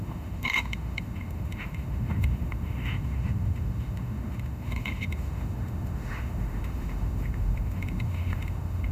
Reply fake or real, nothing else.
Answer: fake